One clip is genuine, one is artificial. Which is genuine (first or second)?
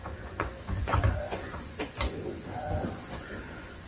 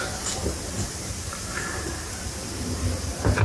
second